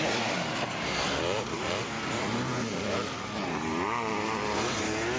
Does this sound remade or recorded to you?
recorded